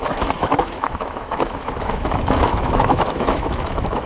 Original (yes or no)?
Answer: no